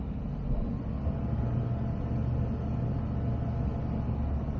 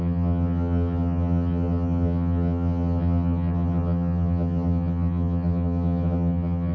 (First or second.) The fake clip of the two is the second